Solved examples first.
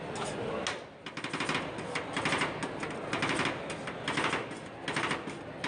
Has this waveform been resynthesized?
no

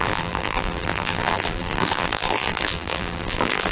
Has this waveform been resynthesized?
yes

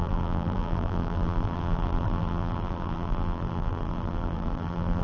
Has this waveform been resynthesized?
yes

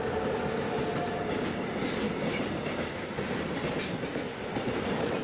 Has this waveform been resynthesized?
no